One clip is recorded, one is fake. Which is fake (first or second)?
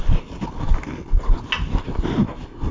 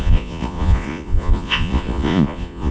second